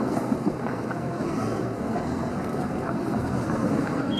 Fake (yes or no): yes